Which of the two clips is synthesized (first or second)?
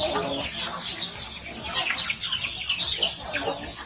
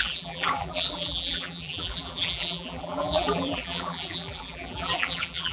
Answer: second